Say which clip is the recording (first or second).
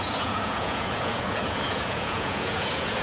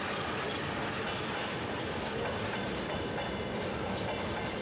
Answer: second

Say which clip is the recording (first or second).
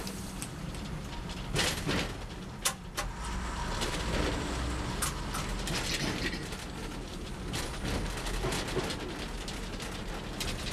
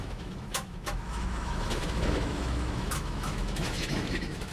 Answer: first